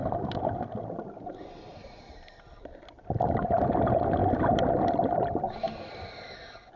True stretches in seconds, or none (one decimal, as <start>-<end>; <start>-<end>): 0.0-6.8